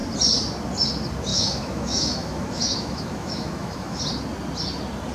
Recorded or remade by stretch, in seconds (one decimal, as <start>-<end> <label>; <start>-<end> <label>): 0.0-1.3 recorded; 1.3-4.0 remade; 4.0-5.1 recorded